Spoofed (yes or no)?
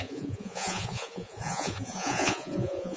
yes